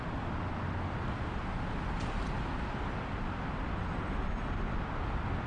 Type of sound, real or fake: real